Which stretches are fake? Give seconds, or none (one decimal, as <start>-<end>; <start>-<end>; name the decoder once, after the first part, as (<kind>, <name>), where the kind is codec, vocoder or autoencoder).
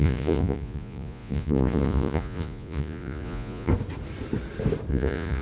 0.0-3.7 (vocoder, Vocos); 4.9-5.4